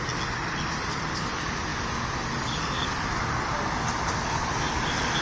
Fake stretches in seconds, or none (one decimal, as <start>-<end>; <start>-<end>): none